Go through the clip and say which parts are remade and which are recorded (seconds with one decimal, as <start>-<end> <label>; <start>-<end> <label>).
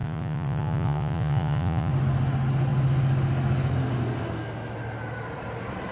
0.0-1.9 remade; 1.9-5.9 recorded